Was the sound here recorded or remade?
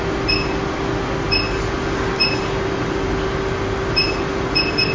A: recorded